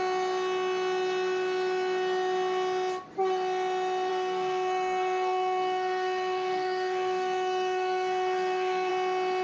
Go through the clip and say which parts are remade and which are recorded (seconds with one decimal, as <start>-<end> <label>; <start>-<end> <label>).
0.0-4.1 recorded; 4.1-8.9 remade; 8.9-9.4 recorded

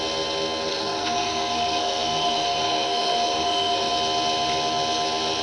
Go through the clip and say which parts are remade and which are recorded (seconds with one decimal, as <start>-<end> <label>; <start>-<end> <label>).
0.0-0.7 recorded; 0.7-3.9 remade; 3.9-5.4 recorded